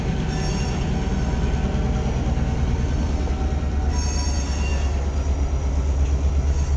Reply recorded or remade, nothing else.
recorded